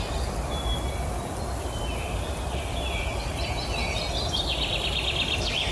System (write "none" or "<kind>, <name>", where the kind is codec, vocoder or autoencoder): none